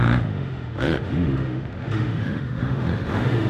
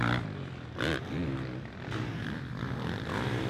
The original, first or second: second